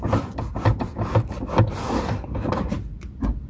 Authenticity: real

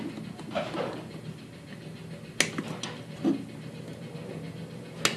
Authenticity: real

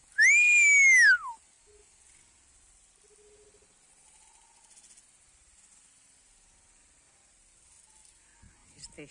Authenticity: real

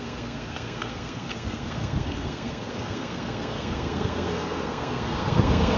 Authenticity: fake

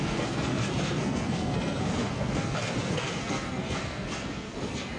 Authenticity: fake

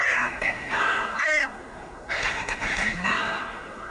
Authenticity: fake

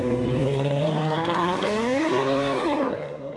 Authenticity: fake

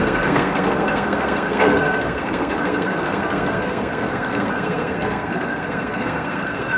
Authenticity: fake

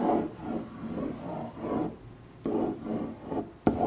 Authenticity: real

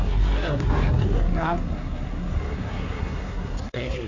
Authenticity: fake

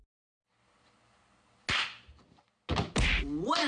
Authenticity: real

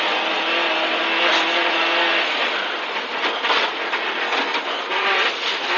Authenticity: real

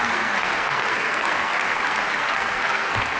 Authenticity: fake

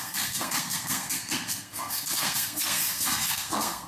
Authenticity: fake